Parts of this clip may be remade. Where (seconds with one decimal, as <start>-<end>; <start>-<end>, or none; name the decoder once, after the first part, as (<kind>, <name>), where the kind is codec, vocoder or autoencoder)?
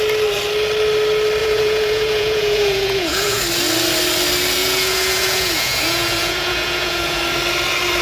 1.4-3.4 (vocoder, Vocos); 4.6-7.2